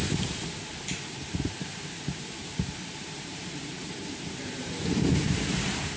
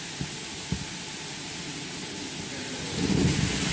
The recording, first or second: second